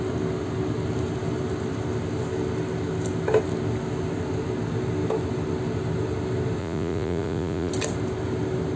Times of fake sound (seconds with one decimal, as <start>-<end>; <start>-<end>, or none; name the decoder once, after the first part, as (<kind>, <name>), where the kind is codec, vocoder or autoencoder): 6.6-7.7 (vocoder, Vocos)